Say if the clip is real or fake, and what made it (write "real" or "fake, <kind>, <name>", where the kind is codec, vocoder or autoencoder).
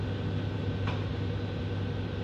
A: real